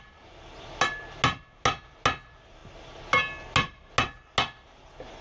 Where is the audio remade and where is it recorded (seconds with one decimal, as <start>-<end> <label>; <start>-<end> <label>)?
0.0-5.2 recorded